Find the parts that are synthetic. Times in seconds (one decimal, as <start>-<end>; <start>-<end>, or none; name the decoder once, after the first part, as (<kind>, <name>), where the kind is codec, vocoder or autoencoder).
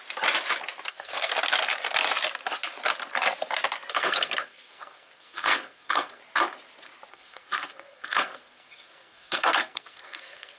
0.9-1.3 (codec, SNAC); 3.9-6.2; 7.1-10.6